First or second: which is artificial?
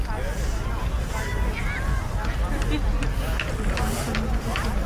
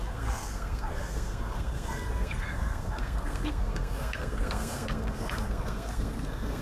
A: second